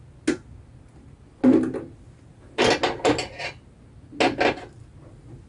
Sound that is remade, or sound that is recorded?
recorded